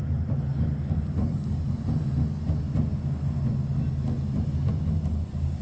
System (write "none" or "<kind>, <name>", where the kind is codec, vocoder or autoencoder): none